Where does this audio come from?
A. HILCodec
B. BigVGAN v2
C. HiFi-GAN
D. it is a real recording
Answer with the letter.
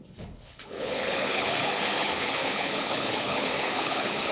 A